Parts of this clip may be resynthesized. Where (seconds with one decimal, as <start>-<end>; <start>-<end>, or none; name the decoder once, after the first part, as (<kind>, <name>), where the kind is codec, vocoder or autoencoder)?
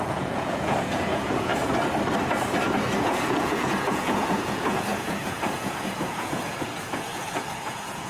0.0-1.5 (vocoder, Vocos); 3.0-8.1